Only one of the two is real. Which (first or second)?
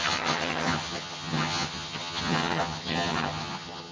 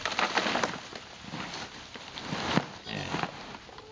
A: second